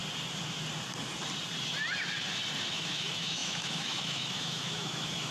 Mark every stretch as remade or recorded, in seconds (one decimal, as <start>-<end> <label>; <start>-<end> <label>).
0.0-2.7 recorded; 2.7-5.3 remade